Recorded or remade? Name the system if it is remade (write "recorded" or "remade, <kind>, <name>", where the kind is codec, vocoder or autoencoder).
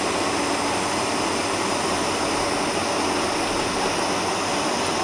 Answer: recorded